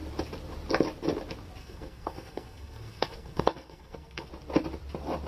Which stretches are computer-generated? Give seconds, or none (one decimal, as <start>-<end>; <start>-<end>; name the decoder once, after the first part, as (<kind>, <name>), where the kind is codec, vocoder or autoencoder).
1.6-4.3 (codec, SNAC)